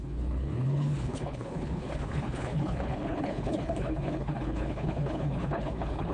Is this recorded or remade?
remade